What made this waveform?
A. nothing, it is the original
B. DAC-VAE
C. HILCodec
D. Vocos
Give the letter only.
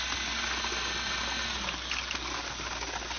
A